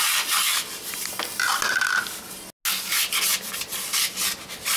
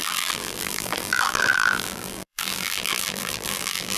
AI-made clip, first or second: second